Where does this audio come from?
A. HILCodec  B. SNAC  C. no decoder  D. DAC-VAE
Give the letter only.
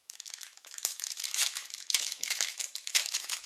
D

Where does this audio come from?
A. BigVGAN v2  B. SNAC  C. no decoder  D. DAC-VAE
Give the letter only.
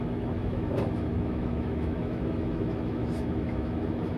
D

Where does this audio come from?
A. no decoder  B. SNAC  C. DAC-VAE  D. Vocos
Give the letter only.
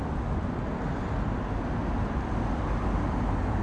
A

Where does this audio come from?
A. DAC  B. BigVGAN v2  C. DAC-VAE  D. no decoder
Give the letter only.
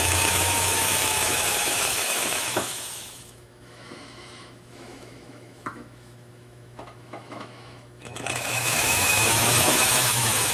C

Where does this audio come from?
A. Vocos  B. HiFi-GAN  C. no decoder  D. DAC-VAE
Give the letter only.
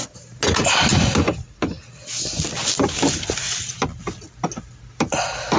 C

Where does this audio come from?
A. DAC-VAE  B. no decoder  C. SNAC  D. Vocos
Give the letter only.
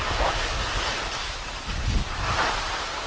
B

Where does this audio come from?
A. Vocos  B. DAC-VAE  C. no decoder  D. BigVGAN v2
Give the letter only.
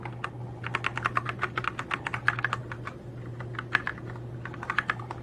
C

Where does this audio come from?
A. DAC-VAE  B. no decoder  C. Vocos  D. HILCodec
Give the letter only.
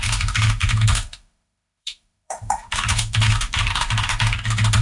A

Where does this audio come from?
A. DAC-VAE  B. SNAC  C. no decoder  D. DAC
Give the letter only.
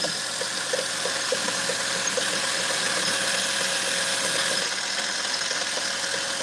C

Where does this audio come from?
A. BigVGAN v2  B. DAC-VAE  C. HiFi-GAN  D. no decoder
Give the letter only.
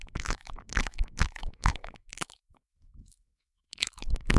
B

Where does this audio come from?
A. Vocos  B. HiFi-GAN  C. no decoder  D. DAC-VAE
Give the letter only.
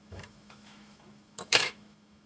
D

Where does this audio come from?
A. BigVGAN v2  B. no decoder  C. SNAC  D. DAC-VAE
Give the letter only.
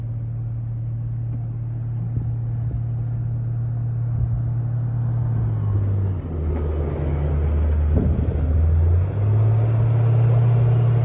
B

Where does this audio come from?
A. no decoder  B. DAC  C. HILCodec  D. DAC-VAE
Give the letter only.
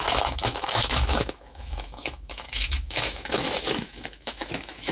D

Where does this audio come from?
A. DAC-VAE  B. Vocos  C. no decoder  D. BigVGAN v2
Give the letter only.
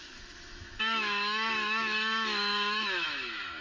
A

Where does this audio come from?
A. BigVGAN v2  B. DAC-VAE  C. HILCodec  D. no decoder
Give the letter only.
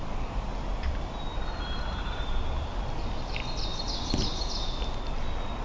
D